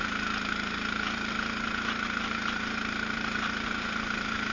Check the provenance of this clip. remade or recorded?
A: remade